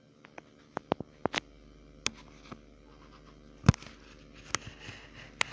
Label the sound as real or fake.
real